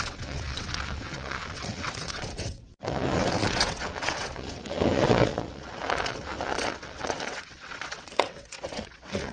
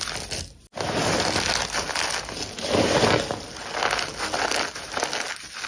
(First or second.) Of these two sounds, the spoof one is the first